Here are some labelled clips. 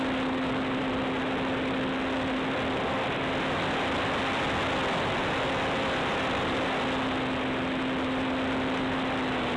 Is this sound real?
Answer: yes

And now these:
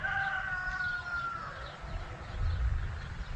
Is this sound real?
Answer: yes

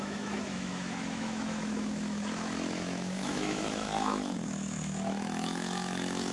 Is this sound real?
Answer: no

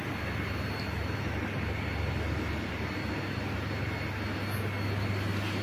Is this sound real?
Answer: yes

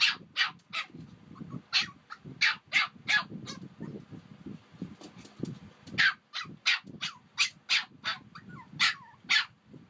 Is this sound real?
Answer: yes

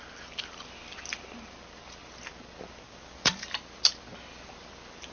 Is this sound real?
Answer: yes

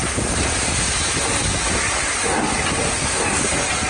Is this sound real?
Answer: yes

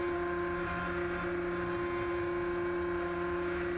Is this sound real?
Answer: yes